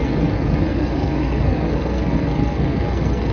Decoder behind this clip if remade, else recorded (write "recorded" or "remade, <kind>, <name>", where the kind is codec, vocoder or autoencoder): remade, codec, SNAC